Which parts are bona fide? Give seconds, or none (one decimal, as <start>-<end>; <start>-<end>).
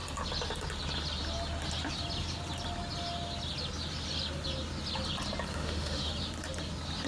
0.0-5.5; 6.1-7.1